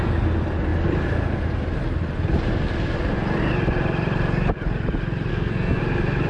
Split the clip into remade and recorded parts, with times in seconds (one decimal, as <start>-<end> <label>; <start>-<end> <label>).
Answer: 0.0-5.3 recorded; 5.3-5.8 remade; 5.8-6.3 recorded